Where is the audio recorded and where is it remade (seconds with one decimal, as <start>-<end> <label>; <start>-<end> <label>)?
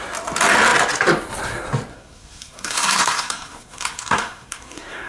0.0-1.9 recorded; 1.9-5.1 remade